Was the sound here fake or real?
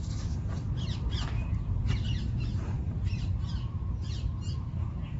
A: real